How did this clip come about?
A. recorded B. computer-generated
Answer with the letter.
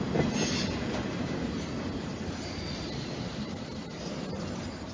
A